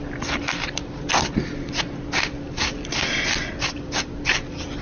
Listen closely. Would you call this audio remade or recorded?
recorded